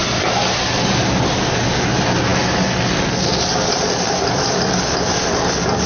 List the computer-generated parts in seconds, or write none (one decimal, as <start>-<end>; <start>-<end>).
none